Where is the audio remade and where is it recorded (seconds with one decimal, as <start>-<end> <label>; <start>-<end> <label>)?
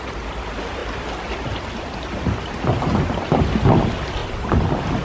0.0-5.0 recorded